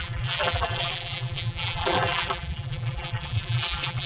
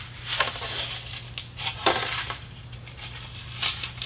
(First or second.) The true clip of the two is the second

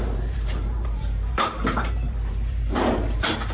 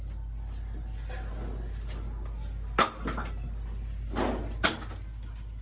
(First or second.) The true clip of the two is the second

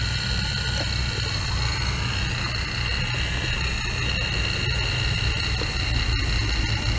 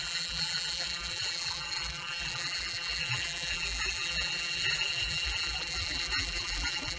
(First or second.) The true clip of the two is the first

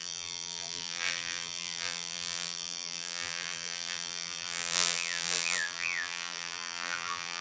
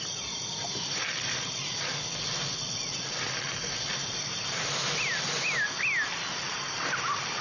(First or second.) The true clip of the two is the second